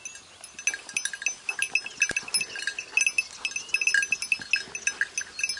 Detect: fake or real real